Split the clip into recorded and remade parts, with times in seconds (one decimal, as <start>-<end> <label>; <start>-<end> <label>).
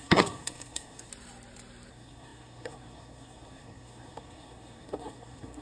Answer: 0.0-1.1 remade; 1.1-1.9 recorded; 1.9-5.6 remade